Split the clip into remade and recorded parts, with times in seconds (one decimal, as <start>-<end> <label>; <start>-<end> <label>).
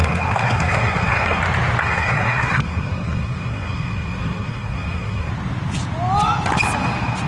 0.0-1.4 remade; 1.4-1.8 recorded; 1.8-5.3 remade; 5.3-7.3 recorded